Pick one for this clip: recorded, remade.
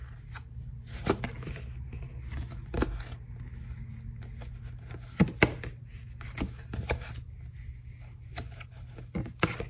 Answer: recorded